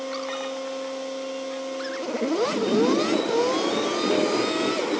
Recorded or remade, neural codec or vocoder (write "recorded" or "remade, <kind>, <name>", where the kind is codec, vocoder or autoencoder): recorded